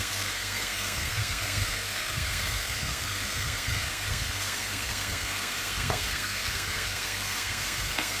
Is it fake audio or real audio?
fake